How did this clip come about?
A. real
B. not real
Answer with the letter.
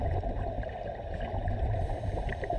B